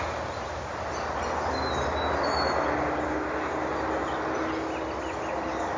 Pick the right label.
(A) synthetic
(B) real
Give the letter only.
B